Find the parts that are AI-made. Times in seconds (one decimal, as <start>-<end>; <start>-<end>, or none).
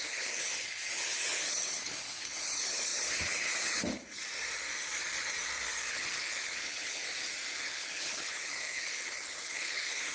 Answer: 0.0-4.2; 5.9-7.0; 7.5-10.1